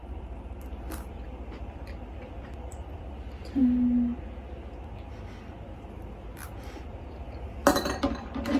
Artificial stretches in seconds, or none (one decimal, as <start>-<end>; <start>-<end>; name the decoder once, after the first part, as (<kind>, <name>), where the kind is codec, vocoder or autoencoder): 0.0-3.6 (vocoder, BigVGAN v2); 5.6-8.6